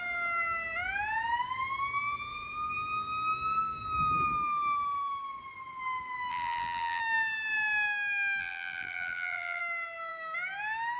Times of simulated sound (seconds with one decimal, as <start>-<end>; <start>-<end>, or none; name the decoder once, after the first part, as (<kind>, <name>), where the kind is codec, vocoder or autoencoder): 6.3-7.0 (vocoder, BigVGAN v2); 8.4-9.6